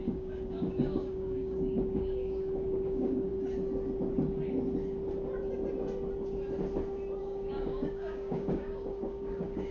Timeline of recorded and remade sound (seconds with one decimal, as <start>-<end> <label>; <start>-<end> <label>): 0.0-3.3 remade; 3.3-7.2 recorded; 7.2-9.7 remade